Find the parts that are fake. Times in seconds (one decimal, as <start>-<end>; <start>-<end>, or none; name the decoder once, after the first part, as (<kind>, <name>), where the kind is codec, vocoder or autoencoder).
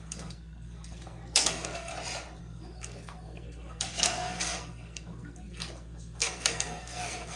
0.0-1.9 (codec, SNAC); 2.4-7.4